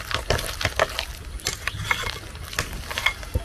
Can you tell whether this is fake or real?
real